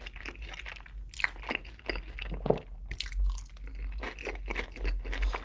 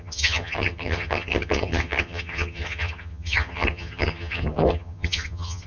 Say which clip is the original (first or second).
first